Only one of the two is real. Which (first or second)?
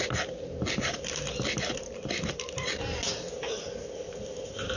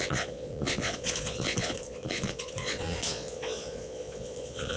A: first